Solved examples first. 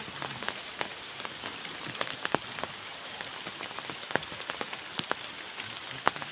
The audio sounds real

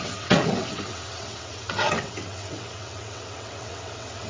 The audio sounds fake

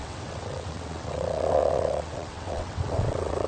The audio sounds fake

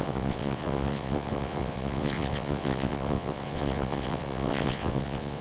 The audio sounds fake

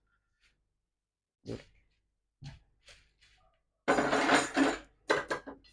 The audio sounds real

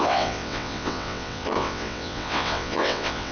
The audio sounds fake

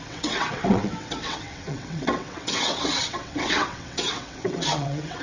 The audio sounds fake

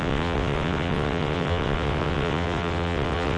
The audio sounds fake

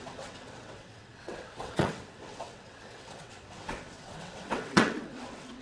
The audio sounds fake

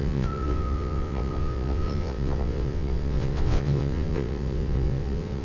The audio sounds fake